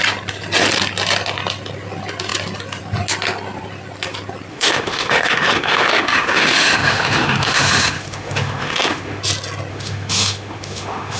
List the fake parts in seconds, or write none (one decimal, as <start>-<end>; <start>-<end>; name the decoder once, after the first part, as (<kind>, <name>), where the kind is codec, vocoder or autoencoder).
4.5-9.2 (autoencoder, DAC-VAE); 9.7-11.2